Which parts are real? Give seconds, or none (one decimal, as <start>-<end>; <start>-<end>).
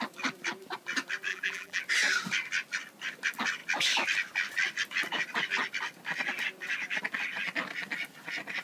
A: 0.0-1.3; 1.8-8.6